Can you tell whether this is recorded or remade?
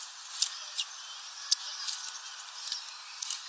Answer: recorded